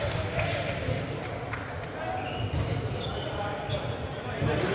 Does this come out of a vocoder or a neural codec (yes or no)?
no